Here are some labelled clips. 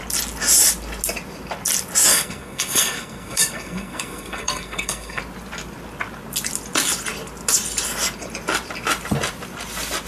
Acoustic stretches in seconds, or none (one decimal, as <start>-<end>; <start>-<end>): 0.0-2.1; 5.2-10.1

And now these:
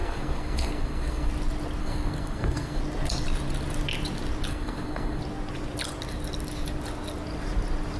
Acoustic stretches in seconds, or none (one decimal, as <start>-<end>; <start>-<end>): 1.3-1.8; 2.8-4.5; 5.2-8.0

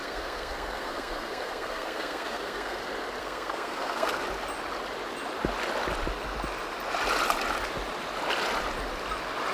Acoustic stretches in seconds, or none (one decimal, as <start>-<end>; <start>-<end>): 2.8-3.2; 4.2-9.5

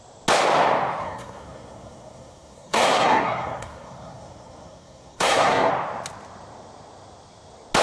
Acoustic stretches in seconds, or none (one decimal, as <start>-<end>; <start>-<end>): 0.0-1.0; 5.7-7.8

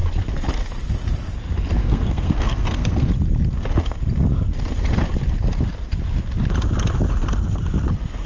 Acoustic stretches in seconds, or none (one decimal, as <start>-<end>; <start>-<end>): 0.0-1.8; 3.1-8.3